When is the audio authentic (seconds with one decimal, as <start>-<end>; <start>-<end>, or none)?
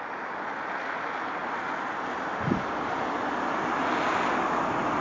0.0-5.0